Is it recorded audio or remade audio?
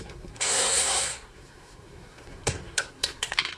remade